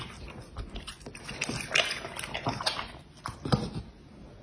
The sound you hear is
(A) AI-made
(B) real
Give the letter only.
B